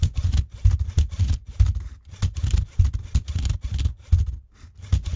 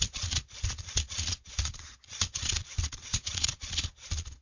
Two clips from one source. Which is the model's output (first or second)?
second